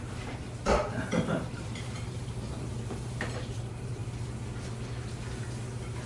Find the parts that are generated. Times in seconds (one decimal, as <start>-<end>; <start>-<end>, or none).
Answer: 0.0-4.0